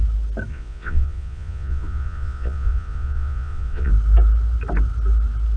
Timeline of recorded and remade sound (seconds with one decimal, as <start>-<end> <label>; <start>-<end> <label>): 0.0-0.5 recorded; 0.5-3.9 remade; 3.9-5.6 recorded

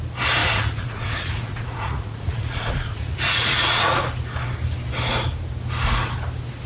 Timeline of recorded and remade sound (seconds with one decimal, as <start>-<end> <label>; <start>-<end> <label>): 0.0-0.4 recorded; 0.4-4.0 remade; 4.0-6.7 recorded

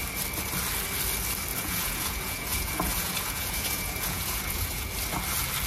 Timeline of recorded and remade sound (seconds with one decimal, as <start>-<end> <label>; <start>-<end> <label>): 0.0-1.5 recorded; 1.5-4.9 remade; 4.9-5.7 recorded

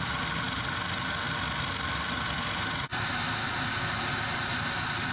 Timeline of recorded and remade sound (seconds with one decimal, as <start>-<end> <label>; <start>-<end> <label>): 0.0-5.1 recorded